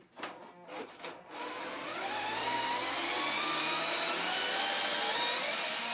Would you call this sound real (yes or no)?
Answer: yes